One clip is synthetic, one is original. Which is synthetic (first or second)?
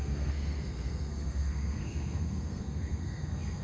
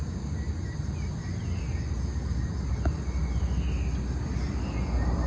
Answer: first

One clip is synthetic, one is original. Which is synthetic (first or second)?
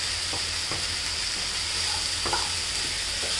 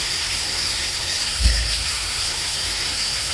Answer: second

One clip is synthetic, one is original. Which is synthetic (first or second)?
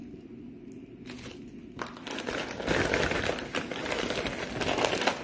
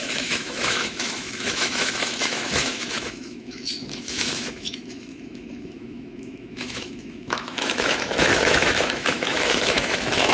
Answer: second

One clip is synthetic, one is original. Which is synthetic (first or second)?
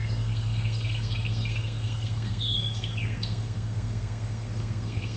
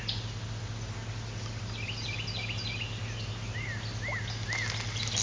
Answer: first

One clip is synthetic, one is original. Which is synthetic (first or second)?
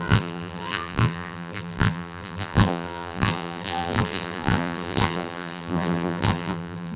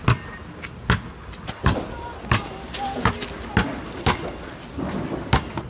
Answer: first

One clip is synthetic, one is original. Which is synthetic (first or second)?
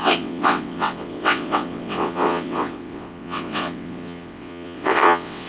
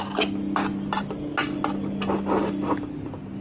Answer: first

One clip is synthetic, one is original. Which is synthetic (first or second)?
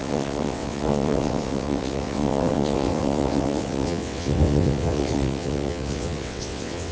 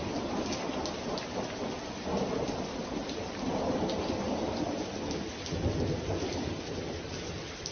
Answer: first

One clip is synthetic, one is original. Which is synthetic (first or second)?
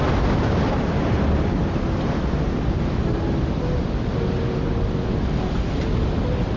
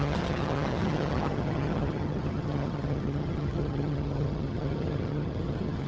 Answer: second